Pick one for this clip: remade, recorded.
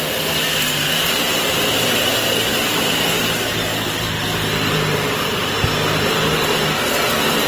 recorded